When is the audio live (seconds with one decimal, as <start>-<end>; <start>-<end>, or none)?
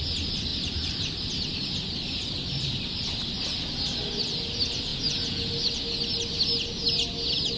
0.0-4.9; 5.5-7.6